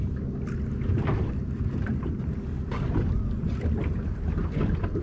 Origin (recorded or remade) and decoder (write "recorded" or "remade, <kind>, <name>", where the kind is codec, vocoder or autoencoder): recorded